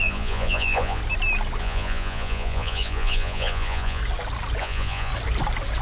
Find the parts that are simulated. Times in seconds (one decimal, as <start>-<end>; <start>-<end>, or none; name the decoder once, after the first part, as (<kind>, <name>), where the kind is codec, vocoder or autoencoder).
0.0-1.0 (vocoder, Vocos); 1.6-4.0; 4.6-5.1